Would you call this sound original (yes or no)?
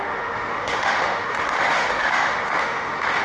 no